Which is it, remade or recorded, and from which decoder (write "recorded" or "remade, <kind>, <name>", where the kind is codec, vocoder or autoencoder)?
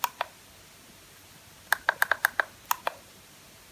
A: recorded